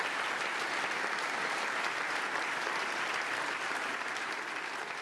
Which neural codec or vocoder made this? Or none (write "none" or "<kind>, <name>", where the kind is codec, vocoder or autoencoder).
none